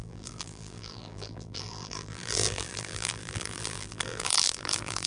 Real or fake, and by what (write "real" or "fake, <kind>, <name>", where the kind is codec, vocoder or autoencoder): fake, vocoder, BigVGAN v2